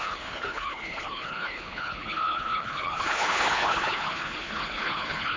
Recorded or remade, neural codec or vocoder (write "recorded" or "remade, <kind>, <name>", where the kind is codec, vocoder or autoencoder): remade, codec, HILCodec